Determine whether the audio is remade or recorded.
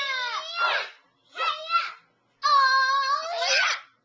recorded